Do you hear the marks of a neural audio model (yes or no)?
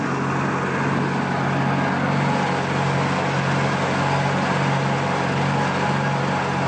no